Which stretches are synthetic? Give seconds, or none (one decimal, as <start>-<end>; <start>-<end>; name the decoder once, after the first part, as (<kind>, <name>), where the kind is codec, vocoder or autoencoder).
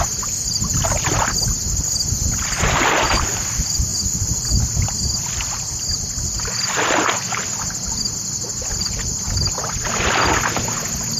none